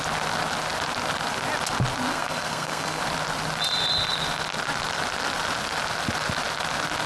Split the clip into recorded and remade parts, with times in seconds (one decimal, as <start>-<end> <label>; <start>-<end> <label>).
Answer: 0.0-2.1 recorded; 2.1-3.0 remade; 3.0-7.1 recorded